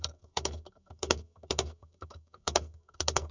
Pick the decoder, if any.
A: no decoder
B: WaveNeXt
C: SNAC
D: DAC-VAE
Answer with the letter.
C